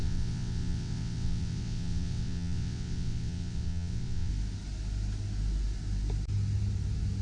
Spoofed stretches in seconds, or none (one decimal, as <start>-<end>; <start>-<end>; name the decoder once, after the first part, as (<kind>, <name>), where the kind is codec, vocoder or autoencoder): 0.0-4.3 (vocoder, WaveNeXt)